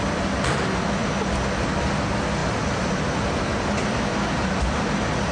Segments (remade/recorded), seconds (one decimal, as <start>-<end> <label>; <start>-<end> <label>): 0.0-5.3 recorded